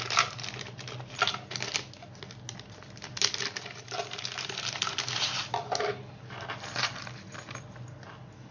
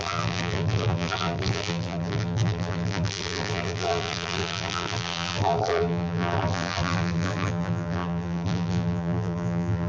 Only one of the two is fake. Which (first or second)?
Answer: second